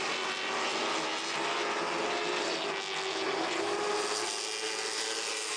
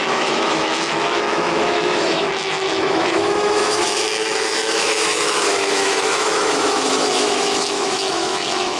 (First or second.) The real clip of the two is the first